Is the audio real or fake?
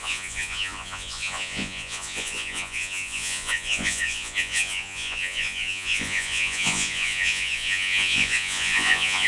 fake